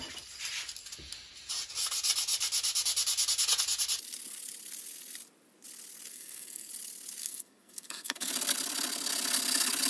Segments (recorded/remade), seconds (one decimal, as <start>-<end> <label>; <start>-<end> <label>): 0.0-6.1 recorded; 6.1-6.7 remade; 6.7-7.2 recorded; 7.2-8.3 remade; 8.3-9.9 recorded